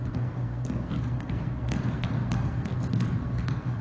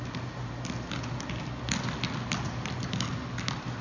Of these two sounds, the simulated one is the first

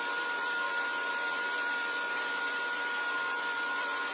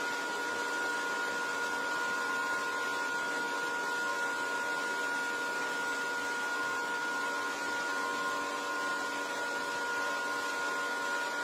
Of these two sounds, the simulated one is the first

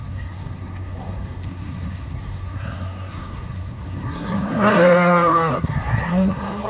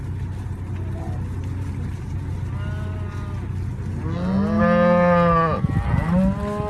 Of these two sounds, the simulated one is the first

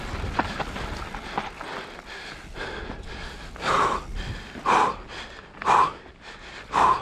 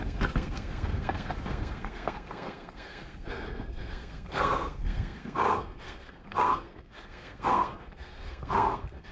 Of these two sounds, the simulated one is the second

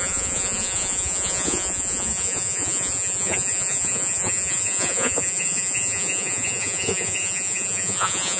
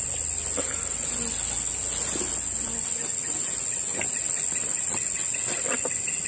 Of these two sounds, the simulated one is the first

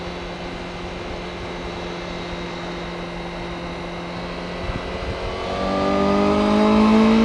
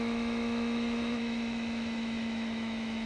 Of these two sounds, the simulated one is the second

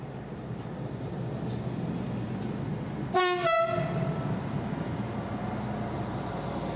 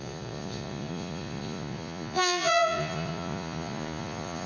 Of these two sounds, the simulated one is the second